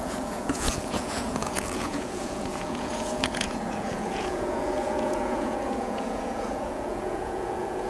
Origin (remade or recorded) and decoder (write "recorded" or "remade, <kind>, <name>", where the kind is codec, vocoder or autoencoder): remade, vocoder, Vocos